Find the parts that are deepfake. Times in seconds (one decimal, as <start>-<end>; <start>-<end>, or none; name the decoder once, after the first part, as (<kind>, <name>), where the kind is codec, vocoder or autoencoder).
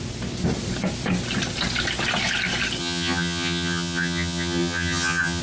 2.8-5.4 (vocoder, HiFi-GAN)